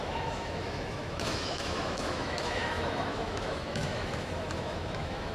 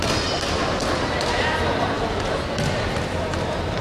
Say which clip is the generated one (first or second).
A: first